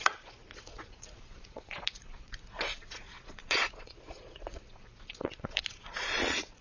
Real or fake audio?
fake